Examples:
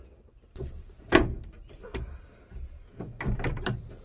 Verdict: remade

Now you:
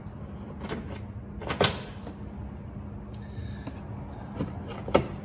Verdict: recorded